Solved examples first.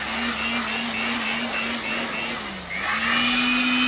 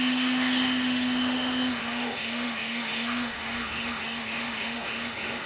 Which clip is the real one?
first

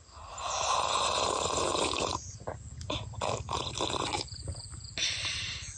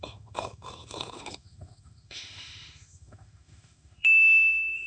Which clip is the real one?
first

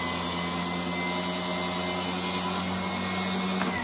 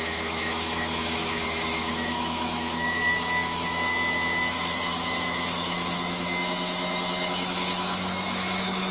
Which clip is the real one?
first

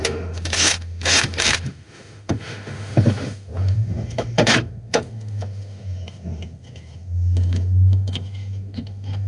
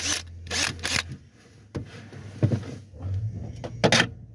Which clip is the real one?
second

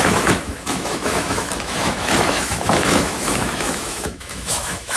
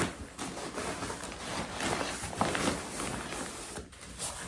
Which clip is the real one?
second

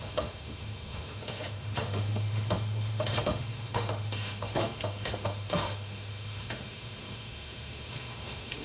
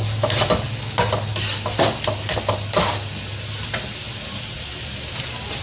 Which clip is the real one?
second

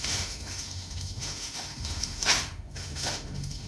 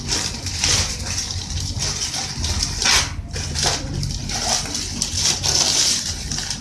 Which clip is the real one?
second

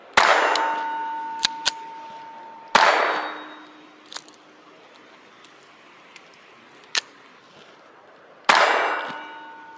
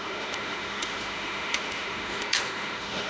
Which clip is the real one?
first